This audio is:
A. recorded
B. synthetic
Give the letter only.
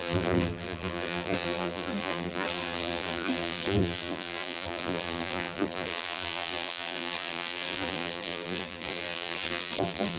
B